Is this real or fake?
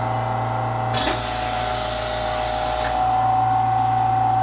real